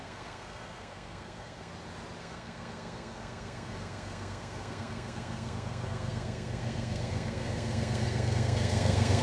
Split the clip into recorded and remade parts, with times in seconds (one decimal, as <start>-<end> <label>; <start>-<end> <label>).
0.0-1.7 remade; 1.7-2.2 recorded; 2.2-9.2 remade